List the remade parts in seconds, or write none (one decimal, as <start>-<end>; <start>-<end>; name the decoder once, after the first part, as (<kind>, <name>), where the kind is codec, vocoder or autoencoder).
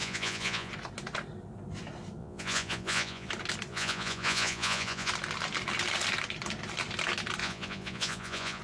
0.0-0.7 (vocoder, Vocos); 2.2-3.3; 3.7-5.1; 7.4-8.6